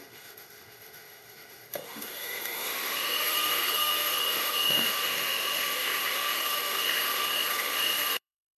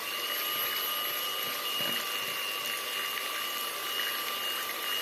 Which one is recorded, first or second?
second